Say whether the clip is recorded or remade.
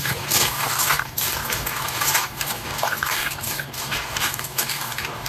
remade